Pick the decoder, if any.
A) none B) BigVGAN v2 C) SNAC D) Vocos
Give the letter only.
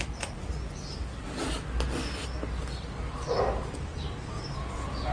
A